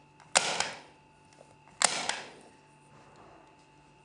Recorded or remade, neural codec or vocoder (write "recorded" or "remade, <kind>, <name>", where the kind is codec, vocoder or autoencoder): recorded